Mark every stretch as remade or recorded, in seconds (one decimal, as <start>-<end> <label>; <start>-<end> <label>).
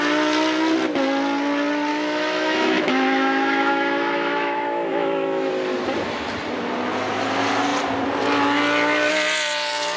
0.0-1.9 recorded; 1.9-5.5 remade; 5.5-10.0 recorded